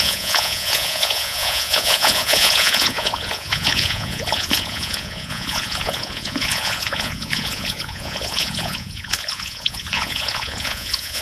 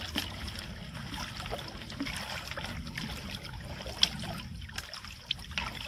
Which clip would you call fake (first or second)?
first